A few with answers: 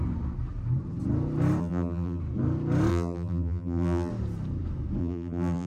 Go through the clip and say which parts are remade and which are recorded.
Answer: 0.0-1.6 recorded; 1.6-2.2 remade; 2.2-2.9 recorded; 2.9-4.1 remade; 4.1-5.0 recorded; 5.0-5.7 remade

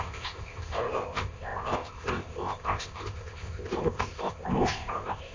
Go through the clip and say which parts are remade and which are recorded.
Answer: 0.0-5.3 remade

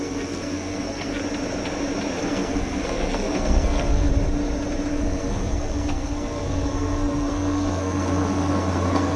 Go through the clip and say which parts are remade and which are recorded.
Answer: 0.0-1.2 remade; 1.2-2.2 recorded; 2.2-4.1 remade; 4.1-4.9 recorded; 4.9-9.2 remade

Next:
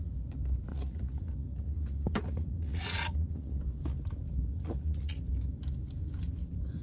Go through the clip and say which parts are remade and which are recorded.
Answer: 0.0-0.7 recorded; 0.7-3.6 remade; 3.6-4.5 recorded; 4.5-5.2 remade; 5.2-6.8 recorded

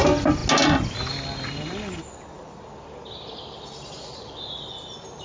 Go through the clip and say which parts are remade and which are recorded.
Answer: 0.0-5.2 recorded

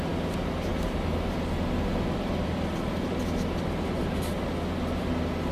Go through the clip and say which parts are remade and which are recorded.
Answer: 0.0-5.5 recorded

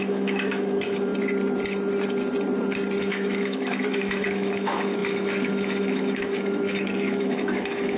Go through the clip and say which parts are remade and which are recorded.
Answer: 0.0-1.1 remade; 1.1-3.0 recorded; 3.0-8.0 remade

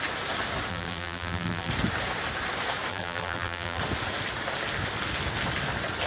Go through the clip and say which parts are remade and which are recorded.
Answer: 0.0-0.7 recorded; 0.7-1.7 remade; 1.7-2.9 recorded; 2.9-3.8 remade; 3.8-6.1 recorded